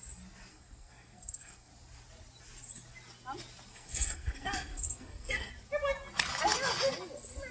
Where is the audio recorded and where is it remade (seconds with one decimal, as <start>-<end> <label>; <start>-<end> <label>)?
0.0-0.5 recorded; 0.5-1.7 remade; 1.7-3.7 recorded; 3.7-5.5 remade; 5.5-7.5 recorded